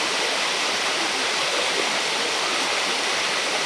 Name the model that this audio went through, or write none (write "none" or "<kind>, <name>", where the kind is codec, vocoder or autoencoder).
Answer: vocoder, BigVGAN v2